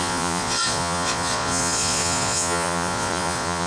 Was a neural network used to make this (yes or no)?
yes